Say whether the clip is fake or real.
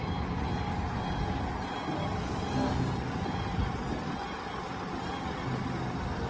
real